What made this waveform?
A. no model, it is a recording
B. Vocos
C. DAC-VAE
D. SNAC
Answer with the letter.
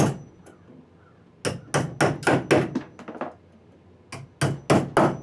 A